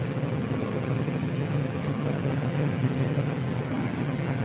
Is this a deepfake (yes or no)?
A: yes